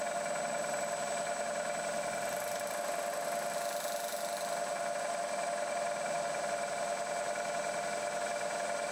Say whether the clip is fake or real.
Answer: real